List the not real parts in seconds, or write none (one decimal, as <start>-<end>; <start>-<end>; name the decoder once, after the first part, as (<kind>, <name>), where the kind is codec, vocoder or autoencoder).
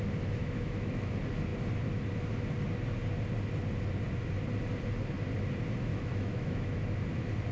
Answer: 0.4-1.1 (autoencoder, DAC-VAE); 5.9-6.8